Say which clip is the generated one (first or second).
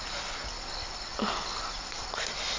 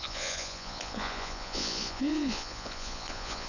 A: second